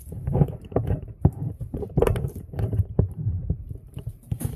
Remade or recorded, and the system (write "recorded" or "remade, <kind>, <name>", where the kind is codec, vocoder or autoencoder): remade, vocoder, BigVGAN v2